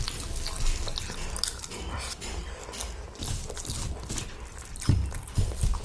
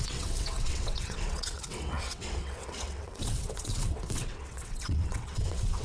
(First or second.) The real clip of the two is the first